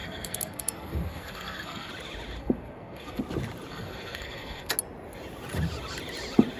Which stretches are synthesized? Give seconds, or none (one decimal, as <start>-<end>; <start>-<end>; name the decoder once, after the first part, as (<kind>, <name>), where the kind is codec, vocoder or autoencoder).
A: 0.0-1.9 (codec, SNAC); 2.4-3.2; 3.7-4.7